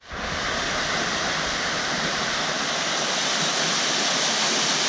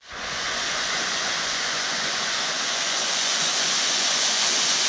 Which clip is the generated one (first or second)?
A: second